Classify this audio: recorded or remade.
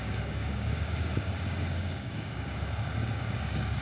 remade